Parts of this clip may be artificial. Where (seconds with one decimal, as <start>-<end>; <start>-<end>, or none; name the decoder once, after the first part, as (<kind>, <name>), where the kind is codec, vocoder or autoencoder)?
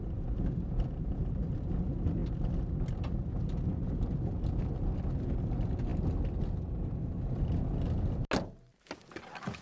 none